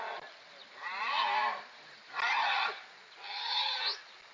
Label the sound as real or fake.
real